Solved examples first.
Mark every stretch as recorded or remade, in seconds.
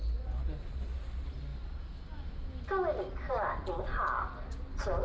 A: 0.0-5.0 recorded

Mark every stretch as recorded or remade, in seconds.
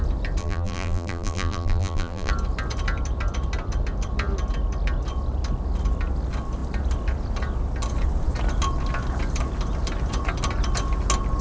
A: 0.0-0.4 recorded; 0.4-2.3 remade; 2.3-11.4 recorded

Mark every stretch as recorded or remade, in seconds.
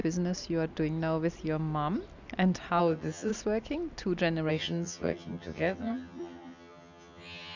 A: 0.0-2.8 recorded; 2.8-3.3 remade; 3.3-4.5 recorded; 4.5-7.6 remade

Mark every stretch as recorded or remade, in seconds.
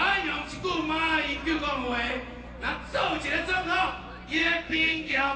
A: 0.0-4.4 recorded; 4.4-5.4 remade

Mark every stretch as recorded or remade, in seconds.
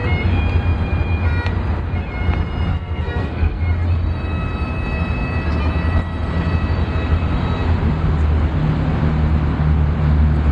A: 0.0-2.7 recorded; 2.7-3.6 remade; 3.6-10.5 recorded